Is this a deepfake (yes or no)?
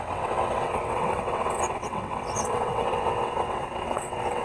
yes